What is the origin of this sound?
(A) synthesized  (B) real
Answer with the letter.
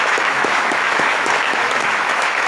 A